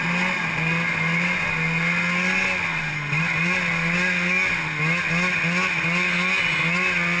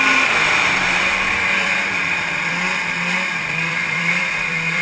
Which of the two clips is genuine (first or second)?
first